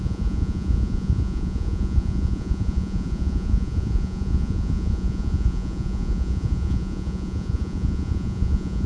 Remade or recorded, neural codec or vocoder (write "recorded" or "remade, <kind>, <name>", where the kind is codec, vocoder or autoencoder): remade, vocoder, Vocos